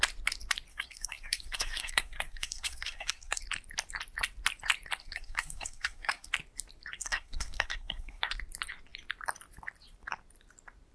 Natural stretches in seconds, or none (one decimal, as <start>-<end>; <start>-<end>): 0.0-0.7; 3.4-5.0; 6.3-7.0; 8.2-10.9